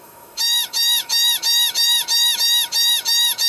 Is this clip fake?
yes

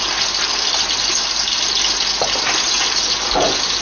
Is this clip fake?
no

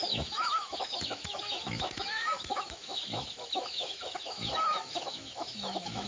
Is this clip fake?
yes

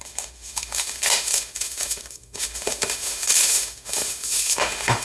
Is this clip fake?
yes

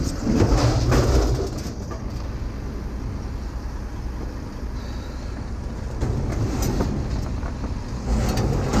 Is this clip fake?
no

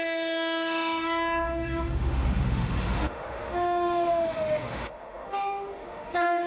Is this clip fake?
yes